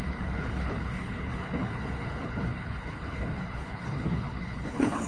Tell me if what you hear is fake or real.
fake